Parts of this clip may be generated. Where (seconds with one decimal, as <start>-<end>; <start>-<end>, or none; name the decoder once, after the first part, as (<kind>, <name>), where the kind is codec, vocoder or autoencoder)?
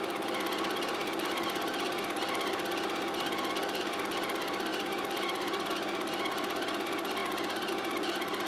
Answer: 1.0-2.0 (vocoder, BigVGAN v2); 4.7-5.7